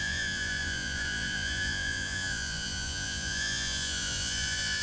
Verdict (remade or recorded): remade